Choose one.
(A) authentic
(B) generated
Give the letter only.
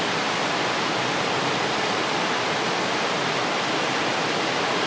A